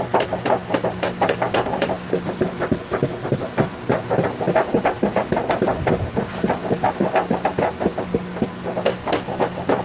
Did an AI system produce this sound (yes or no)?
no